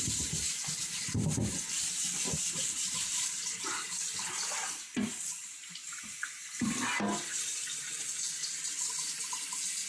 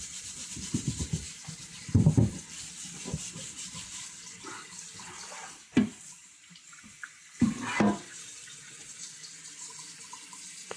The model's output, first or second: second